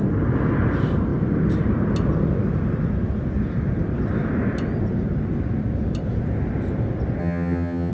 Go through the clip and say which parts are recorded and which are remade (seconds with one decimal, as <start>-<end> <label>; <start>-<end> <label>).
0.0-7.2 recorded; 7.2-7.9 remade